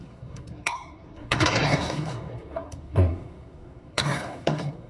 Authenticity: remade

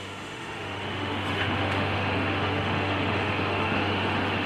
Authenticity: remade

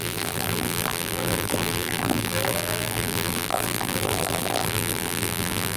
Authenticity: remade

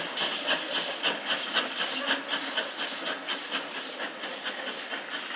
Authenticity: recorded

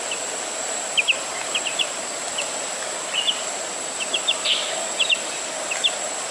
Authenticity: recorded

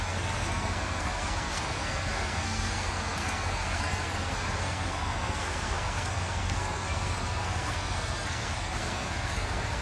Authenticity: remade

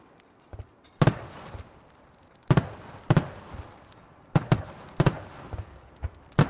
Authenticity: recorded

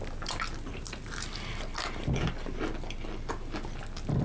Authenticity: recorded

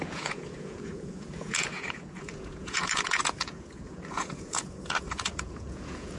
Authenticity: remade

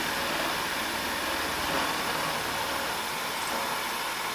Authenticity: recorded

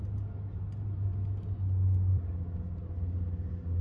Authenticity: recorded